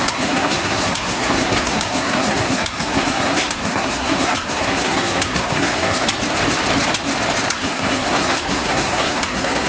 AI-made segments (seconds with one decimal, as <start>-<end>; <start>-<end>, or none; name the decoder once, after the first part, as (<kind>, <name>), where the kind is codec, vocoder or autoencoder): 0.0-6.0 (codec, SNAC); 7.5-9.7